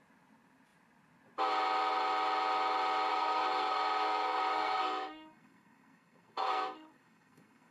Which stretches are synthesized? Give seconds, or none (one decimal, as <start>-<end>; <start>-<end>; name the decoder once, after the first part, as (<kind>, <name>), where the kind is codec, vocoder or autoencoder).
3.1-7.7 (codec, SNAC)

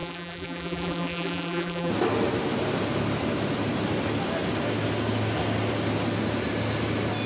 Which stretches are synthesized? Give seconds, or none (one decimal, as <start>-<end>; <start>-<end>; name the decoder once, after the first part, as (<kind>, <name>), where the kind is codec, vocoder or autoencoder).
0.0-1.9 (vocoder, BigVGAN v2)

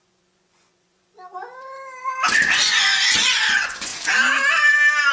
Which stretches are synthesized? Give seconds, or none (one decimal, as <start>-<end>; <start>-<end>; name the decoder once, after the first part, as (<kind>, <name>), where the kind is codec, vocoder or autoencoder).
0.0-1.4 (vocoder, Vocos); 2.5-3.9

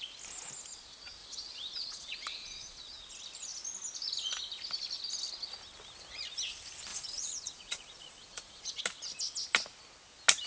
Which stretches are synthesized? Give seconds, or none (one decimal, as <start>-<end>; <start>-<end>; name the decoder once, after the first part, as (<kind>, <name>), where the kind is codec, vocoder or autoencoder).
1.2-2.9 (vocoder, Vocos); 6.9-8.8

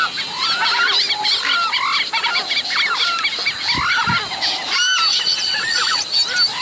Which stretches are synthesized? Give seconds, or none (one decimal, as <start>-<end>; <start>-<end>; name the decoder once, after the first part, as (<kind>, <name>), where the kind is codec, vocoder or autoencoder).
5.1-6.0 (vocoder, WaveNeXt)